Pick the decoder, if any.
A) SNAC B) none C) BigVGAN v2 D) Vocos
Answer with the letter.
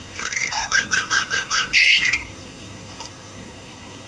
A